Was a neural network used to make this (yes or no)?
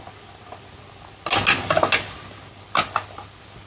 no